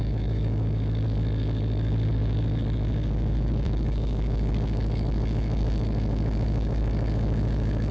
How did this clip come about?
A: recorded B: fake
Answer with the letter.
B